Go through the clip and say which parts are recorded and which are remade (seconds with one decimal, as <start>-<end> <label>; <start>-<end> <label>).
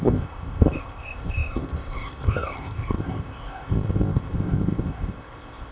0.0-5.7 remade